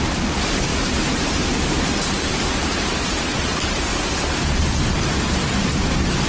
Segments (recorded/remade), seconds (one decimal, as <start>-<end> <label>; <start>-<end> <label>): 0.0-3.9 remade; 3.9-4.6 recorded; 4.6-6.3 remade